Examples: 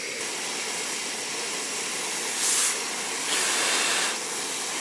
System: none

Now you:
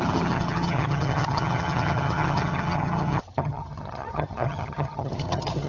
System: vocoder, HiFi-GAN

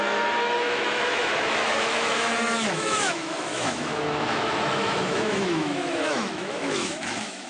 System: autoencoder, DAC-VAE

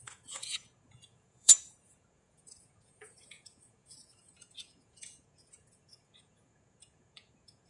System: vocoder, Vocos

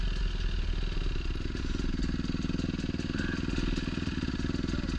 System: none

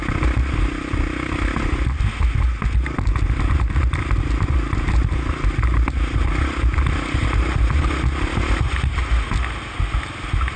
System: none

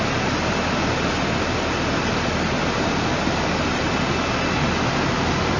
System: none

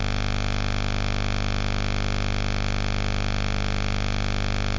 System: none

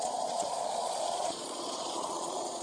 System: vocoder, Vocos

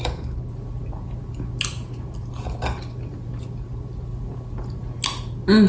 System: none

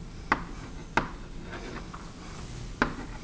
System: none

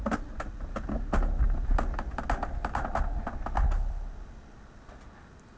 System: none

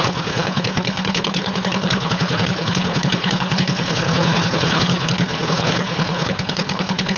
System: codec, HILCodec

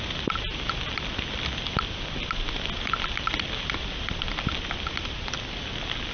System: none